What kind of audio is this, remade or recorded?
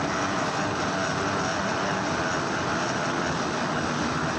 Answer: recorded